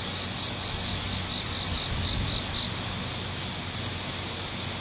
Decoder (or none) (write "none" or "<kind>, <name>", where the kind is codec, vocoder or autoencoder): none